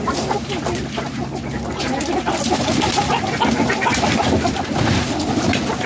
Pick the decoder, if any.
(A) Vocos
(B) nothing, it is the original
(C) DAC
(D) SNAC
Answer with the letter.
B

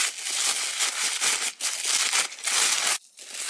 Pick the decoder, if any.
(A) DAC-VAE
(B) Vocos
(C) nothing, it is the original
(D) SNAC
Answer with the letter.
C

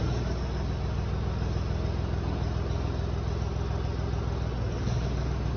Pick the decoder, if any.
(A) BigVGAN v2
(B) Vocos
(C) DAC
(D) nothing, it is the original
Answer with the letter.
D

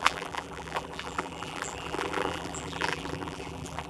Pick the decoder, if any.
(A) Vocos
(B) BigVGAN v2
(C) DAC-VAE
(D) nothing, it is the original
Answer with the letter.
B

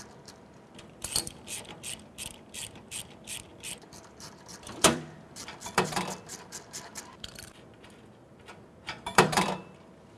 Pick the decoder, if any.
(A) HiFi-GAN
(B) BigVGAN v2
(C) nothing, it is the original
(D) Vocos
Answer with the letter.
B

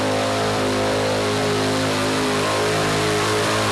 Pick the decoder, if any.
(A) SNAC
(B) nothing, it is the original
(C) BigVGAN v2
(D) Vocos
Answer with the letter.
B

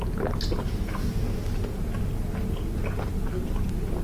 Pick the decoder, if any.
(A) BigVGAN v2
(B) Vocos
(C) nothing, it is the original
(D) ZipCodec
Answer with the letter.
C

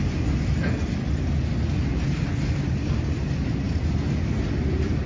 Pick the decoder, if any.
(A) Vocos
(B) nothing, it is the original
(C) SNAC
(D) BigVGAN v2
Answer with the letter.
B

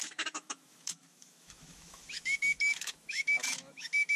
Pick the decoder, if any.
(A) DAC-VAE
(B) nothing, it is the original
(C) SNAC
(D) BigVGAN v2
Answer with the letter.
A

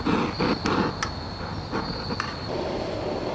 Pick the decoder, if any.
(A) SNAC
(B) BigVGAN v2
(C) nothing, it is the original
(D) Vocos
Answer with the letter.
C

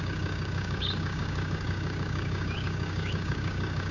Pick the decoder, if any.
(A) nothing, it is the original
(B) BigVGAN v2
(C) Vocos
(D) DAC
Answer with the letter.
D